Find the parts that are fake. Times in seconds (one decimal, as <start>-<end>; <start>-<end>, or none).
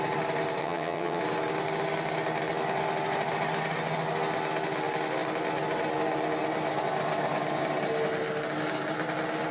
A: 0.6-1.2